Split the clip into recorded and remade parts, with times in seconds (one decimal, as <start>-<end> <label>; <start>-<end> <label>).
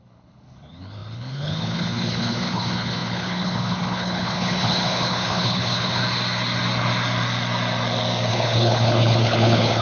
0.0-6.0 remade; 6.0-8.3 recorded; 8.3-9.8 remade